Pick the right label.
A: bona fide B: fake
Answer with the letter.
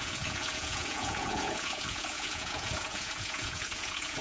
B